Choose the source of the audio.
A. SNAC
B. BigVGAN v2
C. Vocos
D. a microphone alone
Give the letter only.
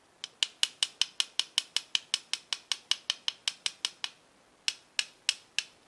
D